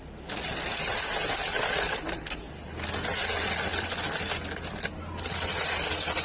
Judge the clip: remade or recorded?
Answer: recorded